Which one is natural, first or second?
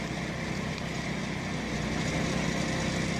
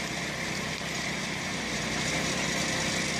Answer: first